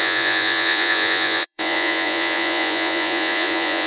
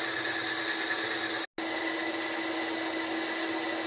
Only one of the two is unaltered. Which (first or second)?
second